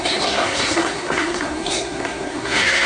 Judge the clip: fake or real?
fake